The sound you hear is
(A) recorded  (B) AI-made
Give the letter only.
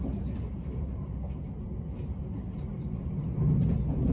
A